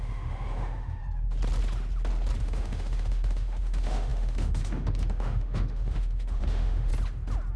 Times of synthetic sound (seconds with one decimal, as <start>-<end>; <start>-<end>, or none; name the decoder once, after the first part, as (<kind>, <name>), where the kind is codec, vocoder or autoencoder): 0.0-1.0 (autoencoder, DAC-VAE); 2.4-6.9